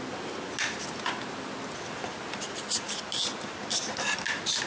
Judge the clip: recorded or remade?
recorded